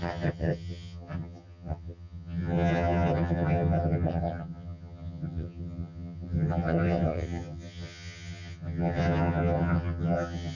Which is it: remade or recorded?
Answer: remade